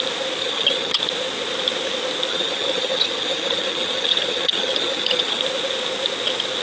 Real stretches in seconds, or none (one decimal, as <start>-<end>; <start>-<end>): 0.0-0.4; 1.0-2.3; 5.4-6.6